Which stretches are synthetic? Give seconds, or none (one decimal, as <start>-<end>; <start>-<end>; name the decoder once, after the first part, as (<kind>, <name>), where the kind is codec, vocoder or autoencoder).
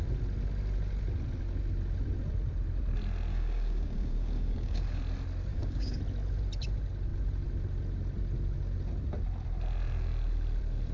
3.3-5.0 (codec, DAC); 5.5-6.0